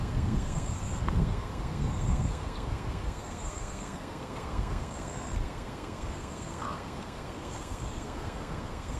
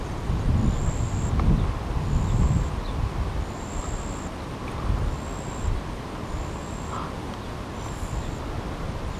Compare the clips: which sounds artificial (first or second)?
first